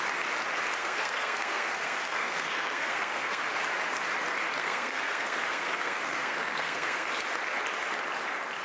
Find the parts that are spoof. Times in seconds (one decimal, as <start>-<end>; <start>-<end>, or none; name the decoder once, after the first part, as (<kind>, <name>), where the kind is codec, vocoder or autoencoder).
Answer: 0.8-3.4 (codec, SNAC); 4.6-7.1